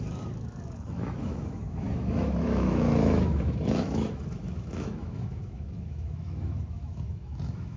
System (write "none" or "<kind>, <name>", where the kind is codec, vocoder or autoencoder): autoencoder, DAC-VAE